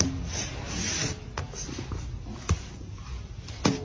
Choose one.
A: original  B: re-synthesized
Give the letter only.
A